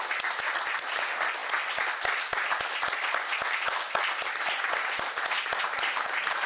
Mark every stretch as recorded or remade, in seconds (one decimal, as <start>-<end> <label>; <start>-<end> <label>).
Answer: 0.0-6.5 recorded